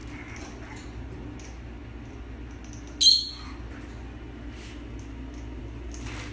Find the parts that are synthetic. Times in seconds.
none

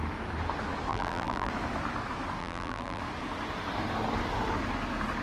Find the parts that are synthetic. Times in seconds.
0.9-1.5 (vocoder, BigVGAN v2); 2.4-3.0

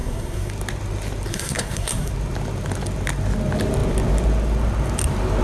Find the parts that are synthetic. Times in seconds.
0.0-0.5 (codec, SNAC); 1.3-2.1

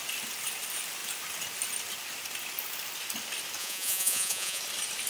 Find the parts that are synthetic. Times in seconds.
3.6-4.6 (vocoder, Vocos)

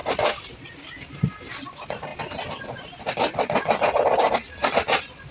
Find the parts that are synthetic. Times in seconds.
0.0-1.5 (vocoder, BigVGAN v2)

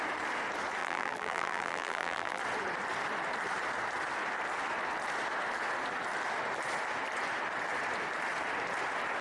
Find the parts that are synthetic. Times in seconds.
0.8-2.4 (vocoder, BigVGAN v2)

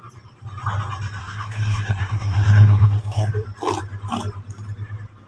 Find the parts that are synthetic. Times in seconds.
1.2-3.3 (codec, SNAC)

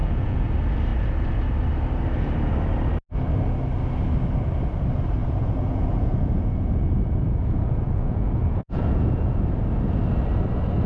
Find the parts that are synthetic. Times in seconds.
0.0-0.5 (vocoder, Vocos); 5.2-9.4